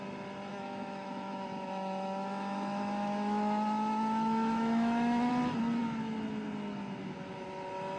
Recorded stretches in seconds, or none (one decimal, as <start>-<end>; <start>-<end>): 0.0-0.5; 5.3-8.0